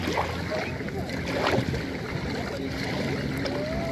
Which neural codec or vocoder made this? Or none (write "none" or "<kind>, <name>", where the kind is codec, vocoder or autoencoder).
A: none